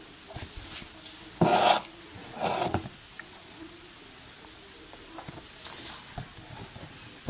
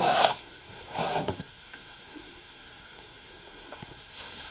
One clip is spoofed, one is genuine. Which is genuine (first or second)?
first